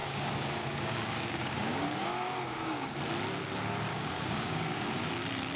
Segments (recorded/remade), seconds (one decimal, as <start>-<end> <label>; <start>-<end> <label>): 0.0-2.9 remade; 2.9-3.9 recorded; 3.9-5.1 remade; 5.1-5.6 recorded